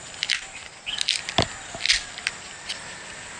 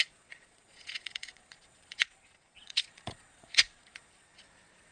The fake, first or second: second